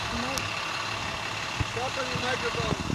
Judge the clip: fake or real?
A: real